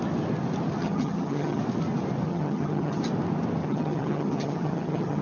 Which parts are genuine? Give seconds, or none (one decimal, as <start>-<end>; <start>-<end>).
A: 0.0-0.8; 1.6-2.3; 3.0-3.6